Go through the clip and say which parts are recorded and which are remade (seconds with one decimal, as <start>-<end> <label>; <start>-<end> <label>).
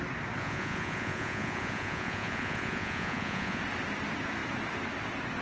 0.0-0.4 recorded; 0.4-3.6 remade; 3.6-5.4 recorded